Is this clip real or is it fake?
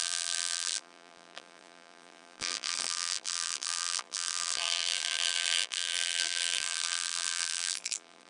fake